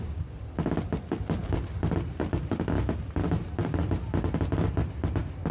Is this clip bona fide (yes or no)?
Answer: yes